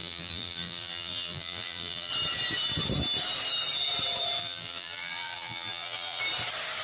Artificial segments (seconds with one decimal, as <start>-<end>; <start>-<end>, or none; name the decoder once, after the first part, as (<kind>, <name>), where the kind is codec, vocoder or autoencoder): 0.0-2.1 (vocoder, BigVGAN v2); 4.4-6.2